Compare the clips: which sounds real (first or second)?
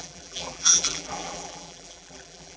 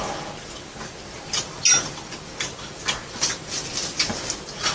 second